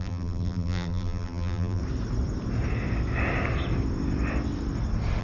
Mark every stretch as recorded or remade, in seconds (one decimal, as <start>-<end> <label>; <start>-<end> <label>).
0.0-1.8 remade; 1.8-5.2 recorded